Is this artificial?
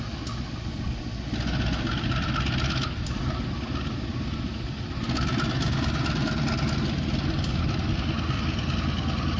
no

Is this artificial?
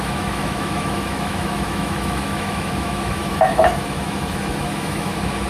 yes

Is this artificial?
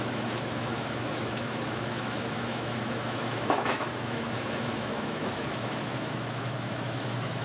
yes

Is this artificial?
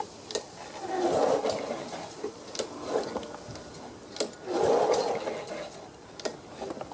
no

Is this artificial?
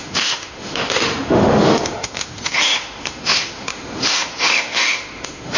yes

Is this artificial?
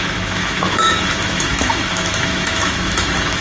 yes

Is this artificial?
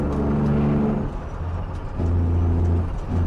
no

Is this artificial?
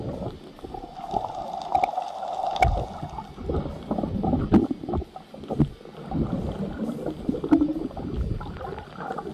no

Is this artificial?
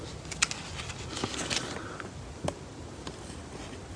no